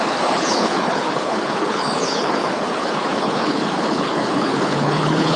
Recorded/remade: remade